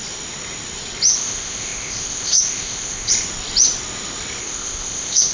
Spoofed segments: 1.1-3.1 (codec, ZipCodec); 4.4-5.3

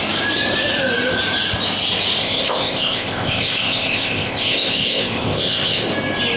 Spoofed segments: 2.2-5.9 (codec, ZipCodec)

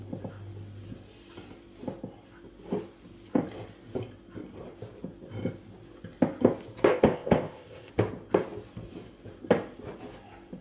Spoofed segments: 6.9-7.9 (codec, ZipCodec)

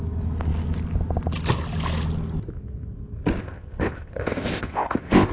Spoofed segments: 3.4-5.3 (codec, ZipCodec)

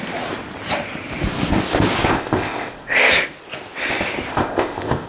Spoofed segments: 2.1-3.0 (codec, ZipCodec); 4.3-5.1

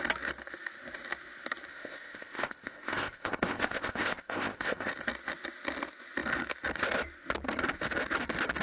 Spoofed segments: 1.7-4.9 (codec, ZipCodec)